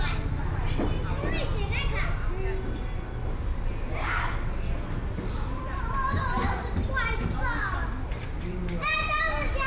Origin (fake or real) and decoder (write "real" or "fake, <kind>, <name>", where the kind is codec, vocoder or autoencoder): real